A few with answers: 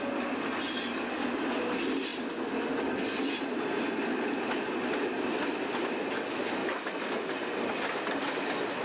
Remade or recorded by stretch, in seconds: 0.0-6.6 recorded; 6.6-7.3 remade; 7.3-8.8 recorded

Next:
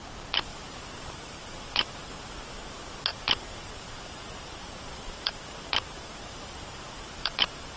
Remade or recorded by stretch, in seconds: 0.0-0.5 recorded; 0.5-2.1 remade; 2.1-3.1 recorded; 3.1-7.8 remade

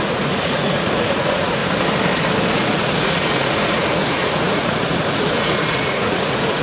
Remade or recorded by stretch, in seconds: 0.0-1.6 remade; 1.6-2.5 recorded; 2.5-6.6 remade

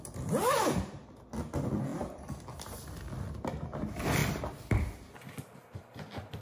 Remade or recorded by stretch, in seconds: 0.0-6.4 recorded

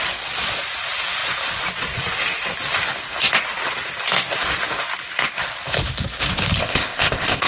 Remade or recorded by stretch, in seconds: 0.0-6.6 recorded; 6.6-7.5 remade